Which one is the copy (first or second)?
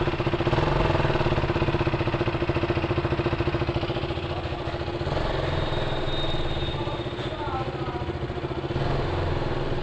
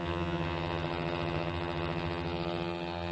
second